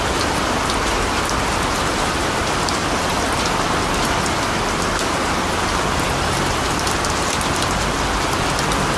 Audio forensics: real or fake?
real